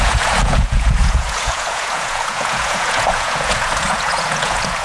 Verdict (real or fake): fake